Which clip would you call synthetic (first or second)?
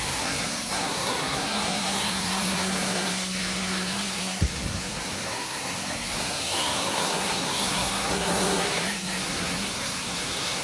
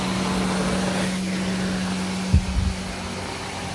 first